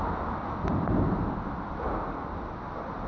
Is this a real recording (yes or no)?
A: yes